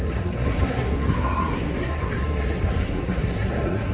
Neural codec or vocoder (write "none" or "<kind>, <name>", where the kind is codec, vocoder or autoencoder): codec, SNAC